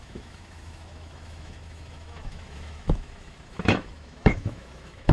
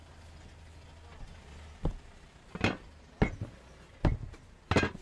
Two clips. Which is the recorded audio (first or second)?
second